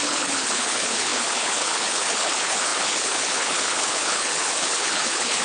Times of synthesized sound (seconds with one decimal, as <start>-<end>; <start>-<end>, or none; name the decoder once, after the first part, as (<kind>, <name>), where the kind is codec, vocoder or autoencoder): 0.0-5.4 (codec, HILCodec)